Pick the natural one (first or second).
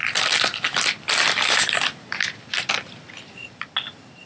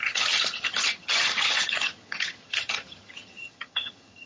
first